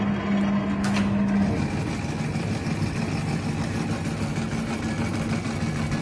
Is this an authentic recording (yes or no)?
yes